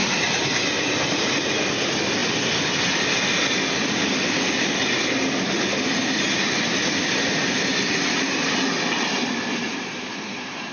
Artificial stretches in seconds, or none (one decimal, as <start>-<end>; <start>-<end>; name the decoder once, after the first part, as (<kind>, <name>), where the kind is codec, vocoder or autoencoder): none